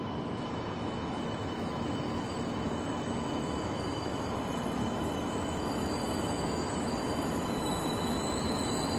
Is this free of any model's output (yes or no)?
no